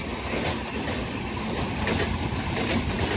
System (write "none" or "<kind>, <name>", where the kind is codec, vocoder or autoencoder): none